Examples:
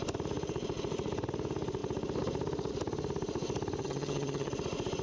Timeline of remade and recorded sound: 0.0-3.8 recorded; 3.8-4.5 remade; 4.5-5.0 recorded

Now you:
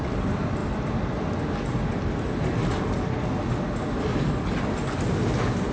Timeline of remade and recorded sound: 0.0-5.7 recorded

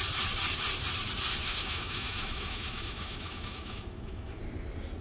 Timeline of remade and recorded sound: 0.0-1.4 recorded; 1.4-4.4 remade; 4.4-5.0 recorded

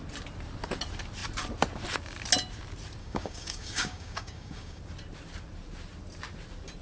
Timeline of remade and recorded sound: 0.0-3.0 recorded; 3.0-4.8 remade; 4.8-6.8 recorded